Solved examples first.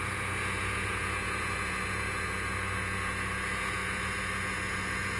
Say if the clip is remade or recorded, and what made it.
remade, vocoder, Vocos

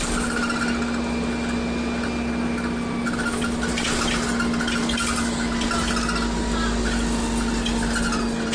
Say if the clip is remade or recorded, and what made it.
recorded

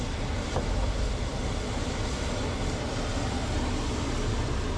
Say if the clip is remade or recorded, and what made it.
recorded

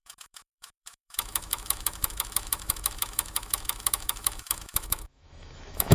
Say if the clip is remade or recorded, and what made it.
remade, autoencoder, DAC-VAE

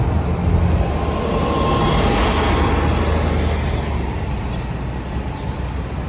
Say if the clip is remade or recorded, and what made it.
recorded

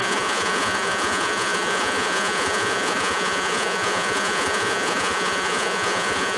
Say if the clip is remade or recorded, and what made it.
remade, vocoder, Vocos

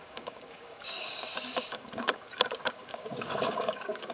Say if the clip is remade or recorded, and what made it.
remade, codec, DAC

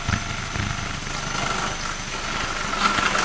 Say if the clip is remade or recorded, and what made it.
recorded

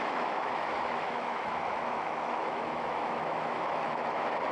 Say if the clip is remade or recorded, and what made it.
remade, autoencoder, DAC-VAE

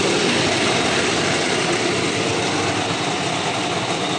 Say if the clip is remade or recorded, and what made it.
recorded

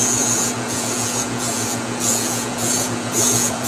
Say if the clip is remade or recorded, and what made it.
remade, vocoder, Vocos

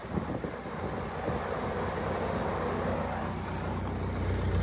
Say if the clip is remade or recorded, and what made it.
recorded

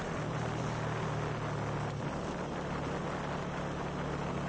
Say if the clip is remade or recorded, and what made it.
recorded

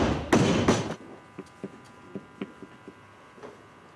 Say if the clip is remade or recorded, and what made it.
recorded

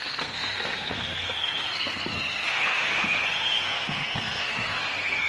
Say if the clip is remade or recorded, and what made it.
remade, codec, SNAC